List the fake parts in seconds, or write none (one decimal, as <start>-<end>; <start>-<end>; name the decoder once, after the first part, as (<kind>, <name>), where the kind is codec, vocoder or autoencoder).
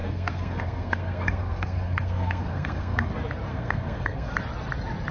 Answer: 0.0-3.1 (codec, SNAC); 3.5-4.3